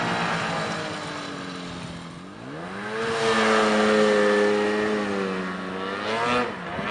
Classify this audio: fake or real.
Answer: real